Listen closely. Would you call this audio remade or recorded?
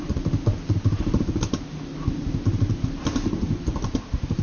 recorded